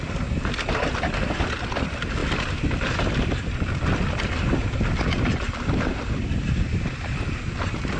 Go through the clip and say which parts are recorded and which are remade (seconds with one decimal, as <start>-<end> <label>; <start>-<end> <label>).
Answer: 0.0-8.0 recorded